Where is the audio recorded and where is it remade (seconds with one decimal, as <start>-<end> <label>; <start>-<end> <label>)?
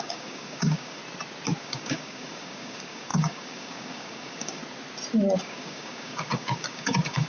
0.0-1.0 remade; 1.0-1.6 recorded; 1.6-4.6 remade; 4.6-5.4 recorded; 5.4-7.3 remade